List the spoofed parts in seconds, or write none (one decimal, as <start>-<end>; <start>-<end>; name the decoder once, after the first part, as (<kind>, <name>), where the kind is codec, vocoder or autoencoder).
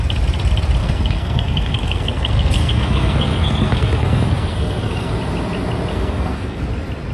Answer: 0.8-5.1 (codec, SNAC); 5.9-6.6